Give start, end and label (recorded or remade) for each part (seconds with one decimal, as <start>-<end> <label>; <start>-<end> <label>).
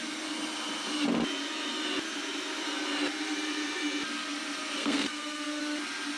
0.0-4.8 recorded; 4.8-5.6 remade; 5.6-6.2 recorded